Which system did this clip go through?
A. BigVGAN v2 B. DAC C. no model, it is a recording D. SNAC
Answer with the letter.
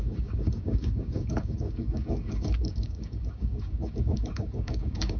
B